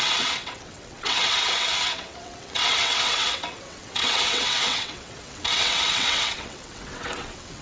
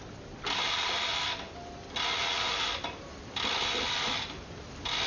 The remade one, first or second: first